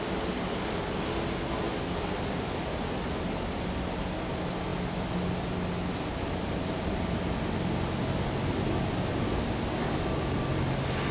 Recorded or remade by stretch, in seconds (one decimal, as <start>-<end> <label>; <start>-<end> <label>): 0.0-11.1 recorded

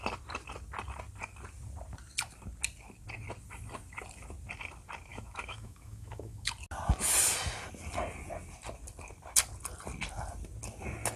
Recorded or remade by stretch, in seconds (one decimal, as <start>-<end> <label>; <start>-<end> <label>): 0.0-5.1 recorded; 5.1-6.5 remade; 6.5-11.2 recorded